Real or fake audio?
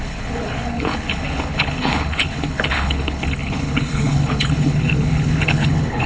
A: fake